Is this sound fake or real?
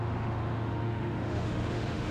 fake